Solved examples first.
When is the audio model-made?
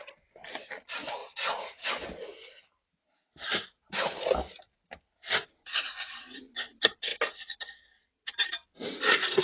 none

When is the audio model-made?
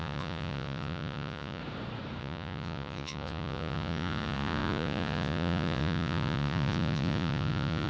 0.0-1.6; 2.2-7.9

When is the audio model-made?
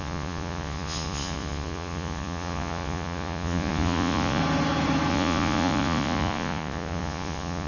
0.0-4.4; 5.1-7.7